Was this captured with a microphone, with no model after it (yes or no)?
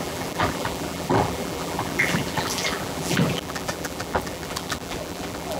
no